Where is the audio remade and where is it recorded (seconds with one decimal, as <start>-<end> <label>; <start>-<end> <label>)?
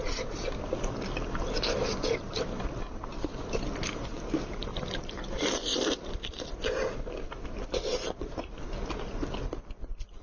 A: 0.0-4.7 recorded; 4.7-6.3 remade; 6.3-10.2 recorded